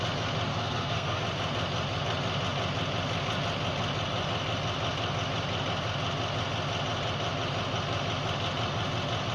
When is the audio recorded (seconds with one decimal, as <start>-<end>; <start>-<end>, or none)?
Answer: 0.0-0.5; 1.2-9.3